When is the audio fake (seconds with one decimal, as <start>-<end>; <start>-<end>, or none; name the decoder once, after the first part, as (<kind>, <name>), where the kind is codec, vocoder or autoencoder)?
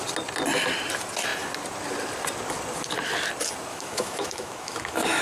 3.7-5.2 (autoencoder, DAC-VAE)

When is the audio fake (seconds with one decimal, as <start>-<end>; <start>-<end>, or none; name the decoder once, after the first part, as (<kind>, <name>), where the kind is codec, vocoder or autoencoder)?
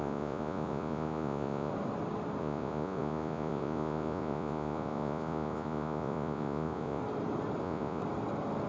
0.0-1.7 (vocoder, Vocos); 2.4-7.0; 7.6-8.0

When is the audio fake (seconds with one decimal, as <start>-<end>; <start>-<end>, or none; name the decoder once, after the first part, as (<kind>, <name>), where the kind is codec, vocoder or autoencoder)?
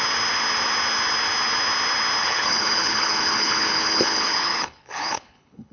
2.2-5.7 (codec, HILCodec)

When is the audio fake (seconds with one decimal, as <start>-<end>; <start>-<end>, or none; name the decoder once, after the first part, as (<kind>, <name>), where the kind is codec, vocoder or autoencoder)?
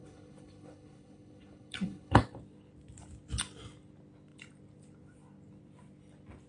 0.0-2.2 (codec, HILCodec)